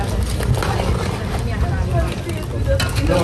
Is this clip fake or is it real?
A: real